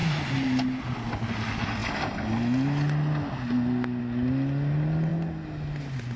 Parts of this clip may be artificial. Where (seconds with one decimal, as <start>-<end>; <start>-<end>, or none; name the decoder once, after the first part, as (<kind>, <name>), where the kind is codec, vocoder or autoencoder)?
0.0-0.8 (vocoder, BigVGAN v2)